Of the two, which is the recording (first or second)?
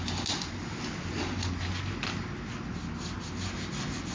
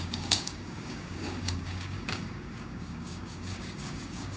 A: first